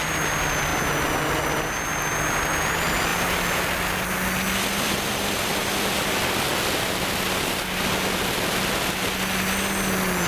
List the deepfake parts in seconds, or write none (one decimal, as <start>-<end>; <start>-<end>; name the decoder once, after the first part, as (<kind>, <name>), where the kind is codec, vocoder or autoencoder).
none